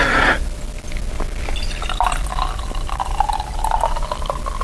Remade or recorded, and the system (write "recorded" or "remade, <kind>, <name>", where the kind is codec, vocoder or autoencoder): recorded